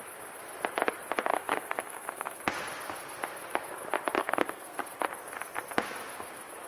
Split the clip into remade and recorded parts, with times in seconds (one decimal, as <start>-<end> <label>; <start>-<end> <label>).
0.0-1.3 recorded; 1.3-2.4 remade; 2.4-4.2 recorded; 4.2-4.8 remade; 4.8-6.7 recorded